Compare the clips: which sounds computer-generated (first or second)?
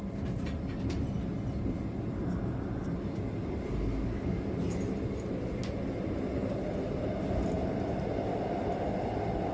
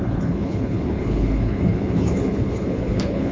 second